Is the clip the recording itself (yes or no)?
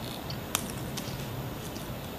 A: yes